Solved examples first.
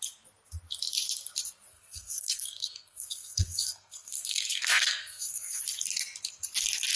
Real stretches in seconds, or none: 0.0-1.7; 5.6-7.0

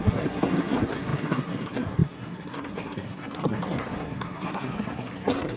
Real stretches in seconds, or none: none

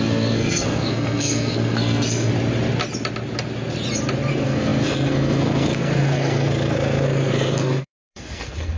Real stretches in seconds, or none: 2.3-4.3